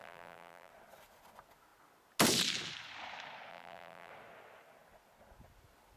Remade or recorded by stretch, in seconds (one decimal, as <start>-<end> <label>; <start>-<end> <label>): 0.0-0.7 remade; 0.7-3.5 recorded; 3.5-4.1 remade; 4.1-6.0 recorded